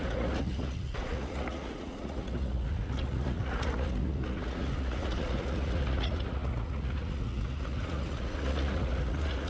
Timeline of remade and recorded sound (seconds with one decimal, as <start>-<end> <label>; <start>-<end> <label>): 0.0-9.5 remade